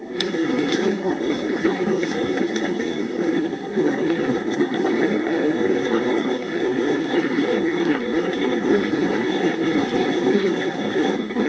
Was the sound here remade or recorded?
remade